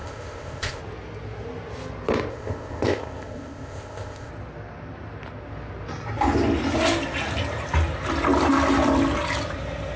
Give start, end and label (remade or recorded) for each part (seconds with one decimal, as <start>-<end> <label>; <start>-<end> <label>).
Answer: 0.0-0.8 remade; 0.8-2.3 recorded; 2.3-4.3 remade; 4.3-10.0 recorded